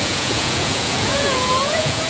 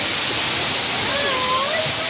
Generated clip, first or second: first